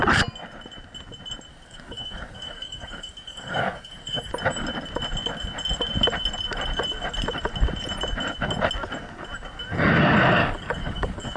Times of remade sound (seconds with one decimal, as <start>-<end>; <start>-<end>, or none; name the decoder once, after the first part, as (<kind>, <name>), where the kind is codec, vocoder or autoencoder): 1.5-4.3 (codec, DAC); 10.4-11.4